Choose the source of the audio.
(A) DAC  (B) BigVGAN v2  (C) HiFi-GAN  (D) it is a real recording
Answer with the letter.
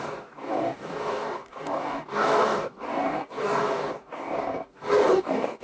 A